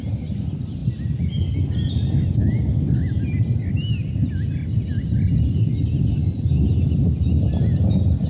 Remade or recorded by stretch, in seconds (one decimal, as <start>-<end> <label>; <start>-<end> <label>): 0.0-8.3 recorded